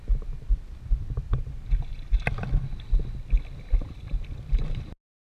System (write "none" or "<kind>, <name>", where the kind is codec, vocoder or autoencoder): none